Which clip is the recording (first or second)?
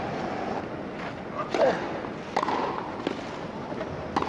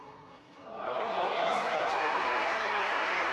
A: first